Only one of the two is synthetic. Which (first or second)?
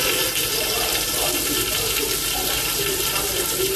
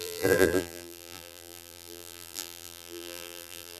second